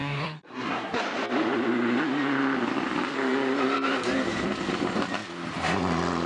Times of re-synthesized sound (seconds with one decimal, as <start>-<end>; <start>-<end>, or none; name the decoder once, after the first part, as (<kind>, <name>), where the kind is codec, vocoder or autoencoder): 0.0-1.0 (codec, SNAC)